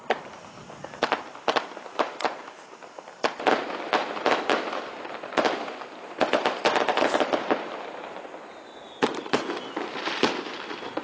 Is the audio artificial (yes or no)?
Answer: yes